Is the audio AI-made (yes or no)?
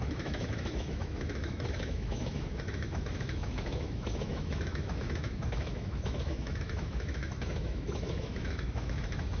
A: yes